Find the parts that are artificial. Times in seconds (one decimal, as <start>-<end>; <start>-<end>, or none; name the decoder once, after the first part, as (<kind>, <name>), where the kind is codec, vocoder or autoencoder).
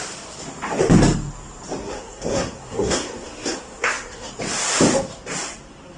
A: 1.8-4.3 (codec, SNAC)